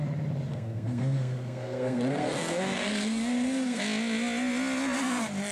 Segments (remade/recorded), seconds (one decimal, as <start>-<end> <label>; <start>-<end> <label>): 0.0-0.5 recorded; 0.5-3.8 remade; 3.8-5.5 recorded